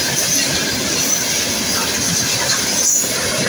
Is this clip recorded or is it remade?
recorded